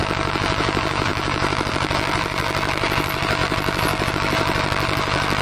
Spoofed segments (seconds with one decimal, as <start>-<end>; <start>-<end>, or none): 0.0-5.4